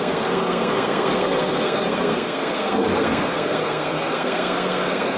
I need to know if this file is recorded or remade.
remade